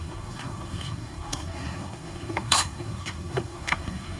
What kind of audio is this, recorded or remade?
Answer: remade